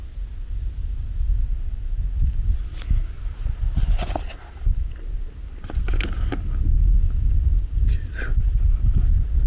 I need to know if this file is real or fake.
real